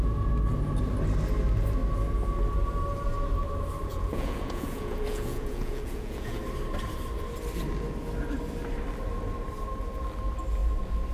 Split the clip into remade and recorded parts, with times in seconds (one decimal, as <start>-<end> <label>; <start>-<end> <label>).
0.0-3.9 recorded; 3.9-6.4 remade; 6.4-11.1 recorded